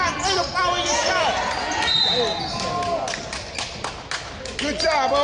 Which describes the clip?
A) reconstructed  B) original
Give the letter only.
B